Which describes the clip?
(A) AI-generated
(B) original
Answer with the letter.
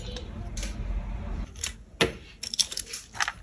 B